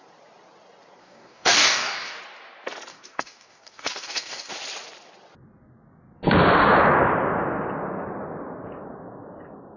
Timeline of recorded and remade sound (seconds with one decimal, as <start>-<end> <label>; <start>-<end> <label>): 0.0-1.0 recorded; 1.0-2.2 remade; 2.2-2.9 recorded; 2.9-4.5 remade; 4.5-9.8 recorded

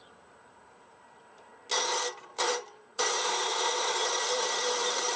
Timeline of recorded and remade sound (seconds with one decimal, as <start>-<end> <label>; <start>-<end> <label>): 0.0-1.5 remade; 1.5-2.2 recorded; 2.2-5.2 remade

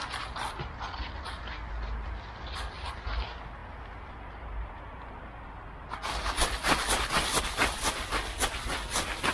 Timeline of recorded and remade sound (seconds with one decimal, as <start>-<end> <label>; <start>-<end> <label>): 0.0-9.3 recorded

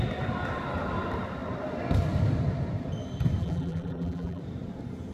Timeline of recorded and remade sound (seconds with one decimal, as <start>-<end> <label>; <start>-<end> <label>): 0.0-3.4 recorded; 3.4-4.4 remade; 4.4-5.1 recorded

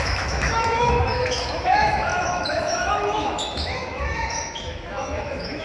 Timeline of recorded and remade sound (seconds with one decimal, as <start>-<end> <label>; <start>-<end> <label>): 0.0-5.6 remade

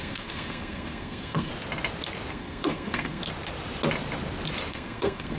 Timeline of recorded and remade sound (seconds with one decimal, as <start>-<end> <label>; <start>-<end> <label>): 0.0-1.5 remade; 1.5-2.3 recorded; 2.3-3.2 remade; 3.2-4.7 recorded; 4.7-5.4 remade

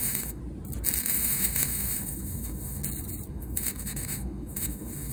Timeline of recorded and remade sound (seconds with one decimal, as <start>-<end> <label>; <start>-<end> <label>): 0.0-0.4 remade; 0.4-1.0 recorded; 1.0-2.8 remade; 2.8-3.3 recorded; 3.3-5.1 remade